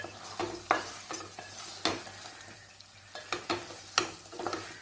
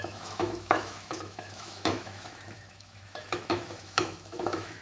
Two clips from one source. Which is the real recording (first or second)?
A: first